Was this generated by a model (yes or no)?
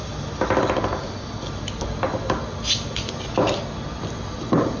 no